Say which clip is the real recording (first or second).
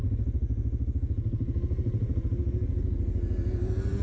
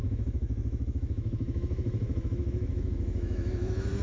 first